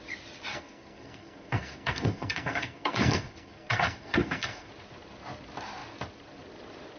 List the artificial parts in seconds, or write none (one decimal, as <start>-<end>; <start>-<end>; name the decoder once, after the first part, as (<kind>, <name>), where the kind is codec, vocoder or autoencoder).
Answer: 0.5-4.7 (codec, SNAC)